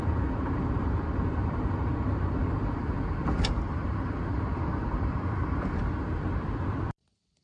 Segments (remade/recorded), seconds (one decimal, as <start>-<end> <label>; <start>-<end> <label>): 0.0-7.4 remade

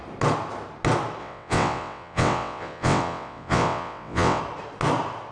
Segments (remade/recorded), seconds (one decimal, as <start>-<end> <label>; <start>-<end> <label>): 0.0-1.2 recorded; 1.2-4.4 remade; 4.4-5.3 recorded

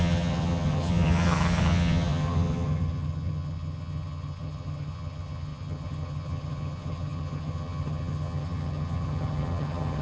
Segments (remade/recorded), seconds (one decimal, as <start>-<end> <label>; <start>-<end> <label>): 0.0-10.0 remade

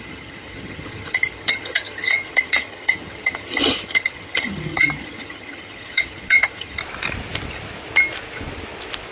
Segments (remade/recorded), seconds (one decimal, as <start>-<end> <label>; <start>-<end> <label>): 0.0-6.8 remade; 6.8-9.1 recorded

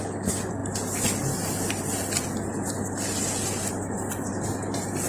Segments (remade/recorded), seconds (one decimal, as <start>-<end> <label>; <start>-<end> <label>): 0.0-5.1 recorded

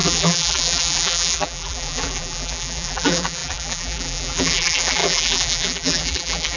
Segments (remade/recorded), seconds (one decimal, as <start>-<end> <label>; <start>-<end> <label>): 0.0-6.6 remade